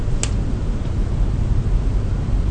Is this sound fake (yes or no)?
no